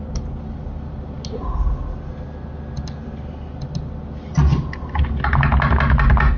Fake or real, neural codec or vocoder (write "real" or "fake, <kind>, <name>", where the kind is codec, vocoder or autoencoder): real